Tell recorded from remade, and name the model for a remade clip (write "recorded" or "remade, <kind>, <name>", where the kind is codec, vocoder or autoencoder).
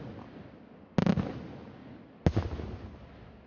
recorded